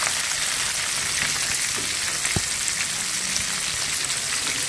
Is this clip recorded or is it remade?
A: recorded